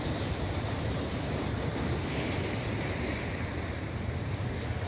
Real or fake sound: fake